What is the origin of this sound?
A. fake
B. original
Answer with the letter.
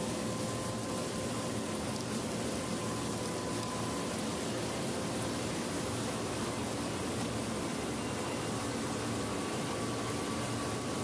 B